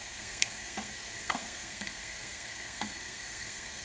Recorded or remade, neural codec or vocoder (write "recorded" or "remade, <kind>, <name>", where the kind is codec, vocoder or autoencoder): remade, codec, SNAC